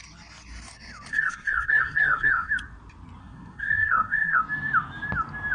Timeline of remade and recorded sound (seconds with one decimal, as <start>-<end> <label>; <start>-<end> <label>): 0.0-1.1 recorded; 1.1-2.5 remade; 2.5-3.2 recorded; 3.2-4.4 remade; 4.4-5.5 recorded